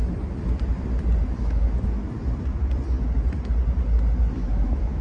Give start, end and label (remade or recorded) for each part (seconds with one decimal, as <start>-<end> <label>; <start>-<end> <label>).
0.0-1.4 recorded; 1.4-2.0 remade; 2.0-4.2 recorded; 4.2-5.0 remade